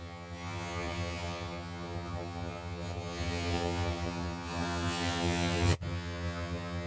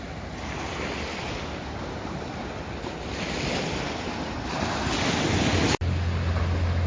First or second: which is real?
second